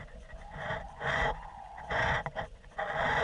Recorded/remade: remade